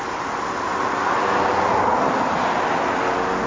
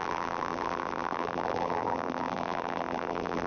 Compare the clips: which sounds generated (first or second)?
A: second